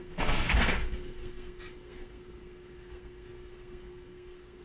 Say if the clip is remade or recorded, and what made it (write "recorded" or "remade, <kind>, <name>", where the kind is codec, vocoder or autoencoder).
remade, codec, SNAC